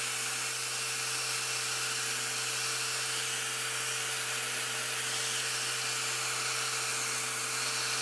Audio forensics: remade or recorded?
recorded